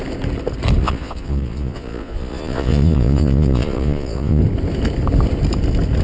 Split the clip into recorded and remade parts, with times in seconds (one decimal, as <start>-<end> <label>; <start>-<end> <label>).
0.0-0.8 recorded; 0.8-4.4 remade; 4.4-6.0 recorded